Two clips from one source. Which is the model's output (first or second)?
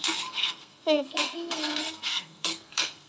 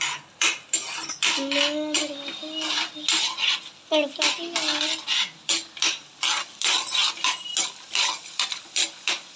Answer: first